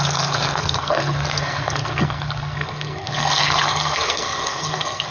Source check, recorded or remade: remade